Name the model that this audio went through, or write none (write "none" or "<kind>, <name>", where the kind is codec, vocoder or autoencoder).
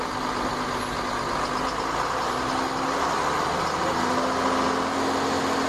none